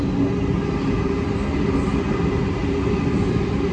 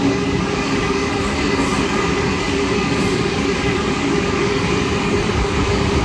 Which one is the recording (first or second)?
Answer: first